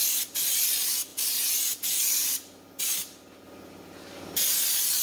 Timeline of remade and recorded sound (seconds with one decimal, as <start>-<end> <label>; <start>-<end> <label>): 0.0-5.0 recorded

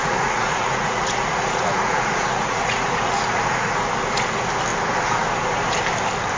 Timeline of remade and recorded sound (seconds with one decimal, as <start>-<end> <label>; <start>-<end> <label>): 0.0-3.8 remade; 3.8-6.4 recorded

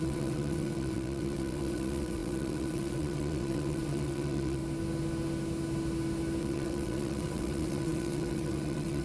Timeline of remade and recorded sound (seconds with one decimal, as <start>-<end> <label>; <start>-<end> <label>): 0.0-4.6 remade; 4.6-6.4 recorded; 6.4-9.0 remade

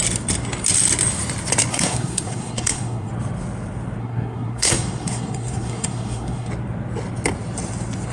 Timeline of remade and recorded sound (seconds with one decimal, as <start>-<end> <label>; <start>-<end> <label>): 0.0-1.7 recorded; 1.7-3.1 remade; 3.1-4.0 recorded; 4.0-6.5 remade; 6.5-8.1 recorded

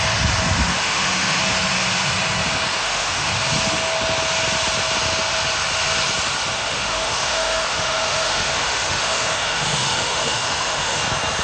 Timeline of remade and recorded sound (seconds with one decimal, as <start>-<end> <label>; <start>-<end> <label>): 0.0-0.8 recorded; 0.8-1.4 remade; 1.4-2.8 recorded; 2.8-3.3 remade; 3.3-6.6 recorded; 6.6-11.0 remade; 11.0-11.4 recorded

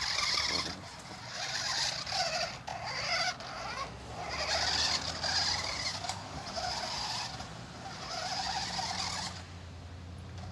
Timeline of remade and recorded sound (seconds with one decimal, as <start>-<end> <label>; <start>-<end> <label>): 0.0-5.9 recorded; 5.9-6.5 remade; 6.5-10.5 recorded

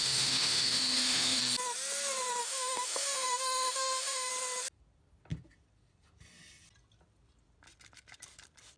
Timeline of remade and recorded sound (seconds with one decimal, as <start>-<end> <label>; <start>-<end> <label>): 0.0-1.4 remade; 1.4-2.4 recorded; 2.4-4.3 remade; 4.3-8.8 recorded